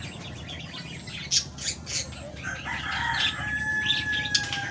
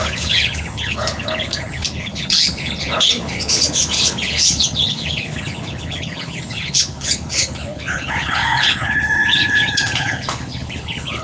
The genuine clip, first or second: first